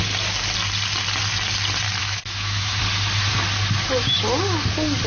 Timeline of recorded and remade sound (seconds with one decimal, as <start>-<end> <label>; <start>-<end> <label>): 0.0-2.0 recorded; 2.0-2.8 remade; 2.8-5.1 recorded